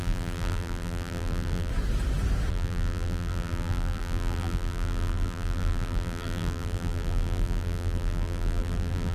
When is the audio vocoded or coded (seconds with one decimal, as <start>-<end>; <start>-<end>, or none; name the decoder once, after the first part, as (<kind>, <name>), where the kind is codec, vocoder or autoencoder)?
0.0-1.7 (vocoder, BigVGAN v2); 2.5-9.1